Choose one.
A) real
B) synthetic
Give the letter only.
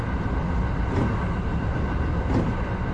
A